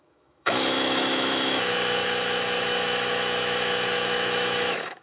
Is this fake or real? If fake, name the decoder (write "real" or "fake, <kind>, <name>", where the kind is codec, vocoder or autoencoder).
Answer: fake, autoencoder, DAC-VAE